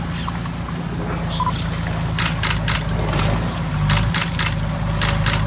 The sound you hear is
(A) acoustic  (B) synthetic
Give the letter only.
A